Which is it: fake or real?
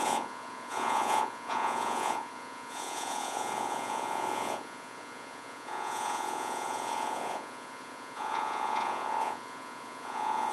fake